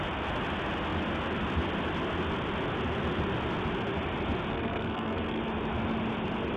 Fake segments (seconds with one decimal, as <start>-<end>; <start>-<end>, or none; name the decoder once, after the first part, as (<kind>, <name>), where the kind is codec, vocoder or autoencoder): 4.5-5.4 (codec, SNAC)